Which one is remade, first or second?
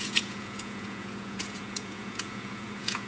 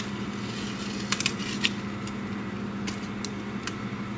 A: first